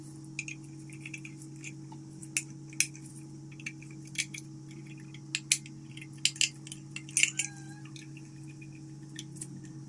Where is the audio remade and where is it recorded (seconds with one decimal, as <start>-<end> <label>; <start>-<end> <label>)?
0.0-9.9 recorded